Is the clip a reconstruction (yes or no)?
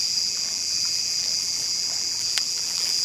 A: yes